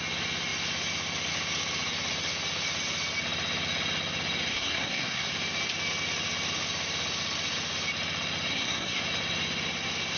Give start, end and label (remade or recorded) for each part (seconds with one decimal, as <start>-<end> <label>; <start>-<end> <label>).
0.0-4.5 recorded; 4.5-5.3 remade; 5.3-8.5 recorded; 8.5-9.0 remade; 9.0-10.2 recorded